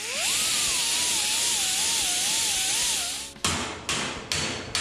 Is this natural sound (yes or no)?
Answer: yes